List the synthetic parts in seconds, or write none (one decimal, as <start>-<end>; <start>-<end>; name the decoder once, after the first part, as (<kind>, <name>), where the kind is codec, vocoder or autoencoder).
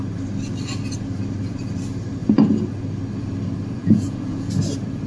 3.8-4.5 (vocoder, Vocos)